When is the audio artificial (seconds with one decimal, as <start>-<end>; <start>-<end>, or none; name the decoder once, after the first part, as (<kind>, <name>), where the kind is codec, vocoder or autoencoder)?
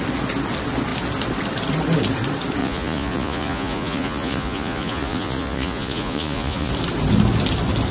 2.6-6.7 (vocoder, Vocos)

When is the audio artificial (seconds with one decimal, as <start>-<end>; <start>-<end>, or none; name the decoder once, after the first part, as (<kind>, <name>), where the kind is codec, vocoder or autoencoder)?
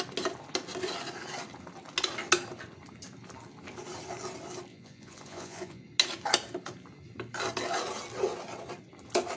4.7-5.8 (vocoder, Vocos)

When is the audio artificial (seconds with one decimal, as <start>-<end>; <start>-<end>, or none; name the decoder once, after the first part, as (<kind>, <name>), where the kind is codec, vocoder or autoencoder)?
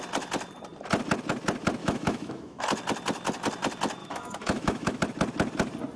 1.8-2.6 (autoencoder, DAC-VAE); 4.0-5.0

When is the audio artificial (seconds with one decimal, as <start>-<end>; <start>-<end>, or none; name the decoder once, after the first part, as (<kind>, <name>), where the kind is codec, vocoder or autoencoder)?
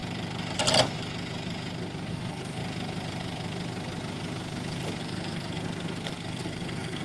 2.1-2.6 (codec, SNAC); 5.0-7.0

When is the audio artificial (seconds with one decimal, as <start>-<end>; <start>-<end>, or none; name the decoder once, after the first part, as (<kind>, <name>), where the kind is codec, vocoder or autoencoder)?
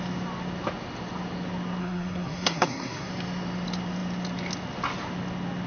1.8-3.1 (codec, SNAC)